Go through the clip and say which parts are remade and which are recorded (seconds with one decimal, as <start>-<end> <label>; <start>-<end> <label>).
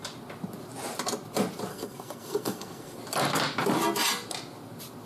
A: 0.0-1.7 recorded; 1.7-3.0 remade; 3.0-5.1 recorded